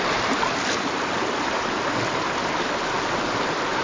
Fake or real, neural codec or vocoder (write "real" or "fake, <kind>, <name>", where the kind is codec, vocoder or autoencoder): real